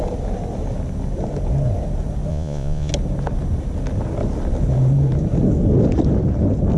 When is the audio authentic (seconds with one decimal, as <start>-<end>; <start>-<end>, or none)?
0.0-2.3; 2.9-6.8